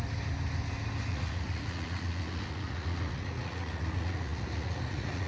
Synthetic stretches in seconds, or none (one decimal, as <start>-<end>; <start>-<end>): 1.1-5.3